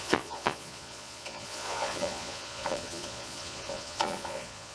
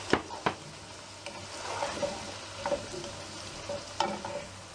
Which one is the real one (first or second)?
second